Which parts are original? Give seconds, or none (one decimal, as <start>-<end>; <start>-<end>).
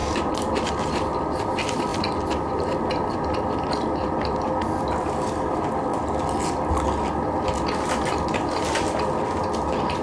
5.9-7.9